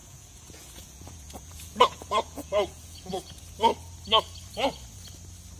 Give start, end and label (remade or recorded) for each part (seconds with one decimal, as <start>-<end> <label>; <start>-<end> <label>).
0.0-3.4 remade; 3.4-5.6 recorded